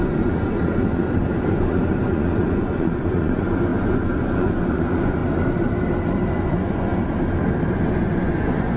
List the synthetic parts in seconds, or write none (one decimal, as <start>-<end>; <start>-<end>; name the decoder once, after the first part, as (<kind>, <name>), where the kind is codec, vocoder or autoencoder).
0.0-5.2 (vocoder, Vocos); 6.3-6.9; 7.7-8.8